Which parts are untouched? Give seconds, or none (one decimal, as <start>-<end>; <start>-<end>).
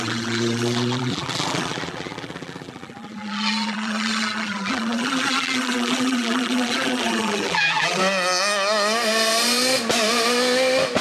8.0-11.0